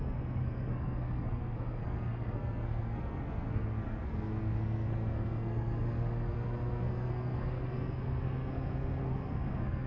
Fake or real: fake